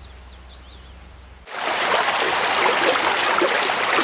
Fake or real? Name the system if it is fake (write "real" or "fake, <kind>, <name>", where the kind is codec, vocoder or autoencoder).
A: real